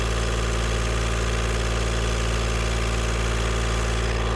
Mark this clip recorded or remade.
recorded